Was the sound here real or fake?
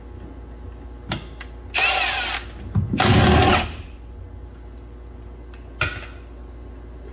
real